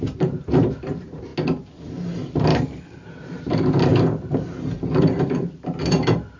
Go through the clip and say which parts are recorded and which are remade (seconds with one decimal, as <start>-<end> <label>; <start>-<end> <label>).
0.0-1.3 remade; 1.3-3.2 recorded; 3.2-3.9 remade; 3.9-5.0 recorded; 5.0-6.4 remade